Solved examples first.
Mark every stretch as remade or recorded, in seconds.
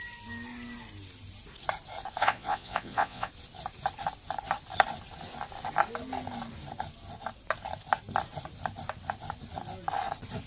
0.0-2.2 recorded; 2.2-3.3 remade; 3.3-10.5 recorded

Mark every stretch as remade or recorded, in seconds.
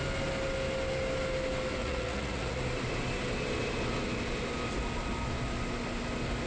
0.0-1.8 recorded; 1.8-2.6 remade; 2.6-6.5 recorded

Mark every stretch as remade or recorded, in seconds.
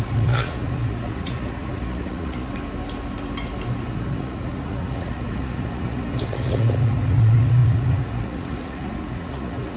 0.0-2.5 remade; 2.5-3.9 recorded; 3.9-9.8 remade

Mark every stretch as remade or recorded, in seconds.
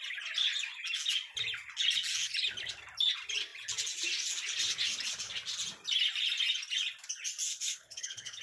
0.0-7.5 recorded; 7.5-8.4 remade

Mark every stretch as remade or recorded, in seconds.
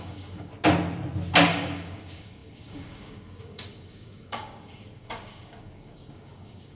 0.0-0.5 remade; 0.5-1.5 recorded; 1.5-6.8 remade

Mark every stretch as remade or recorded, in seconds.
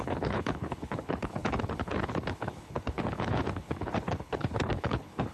0.0-5.3 remade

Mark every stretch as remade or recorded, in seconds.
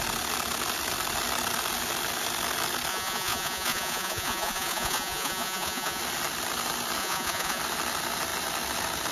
0.0-2.9 recorded; 2.9-6.0 remade; 6.0-7.0 recorded; 7.0-7.6 remade; 7.6-9.1 recorded